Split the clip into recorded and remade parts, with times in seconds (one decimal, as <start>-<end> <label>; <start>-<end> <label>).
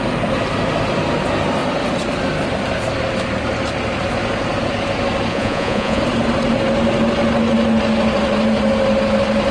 0.0-5.3 recorded; 5.3-6.0 remade; 6.0-9.5 recorded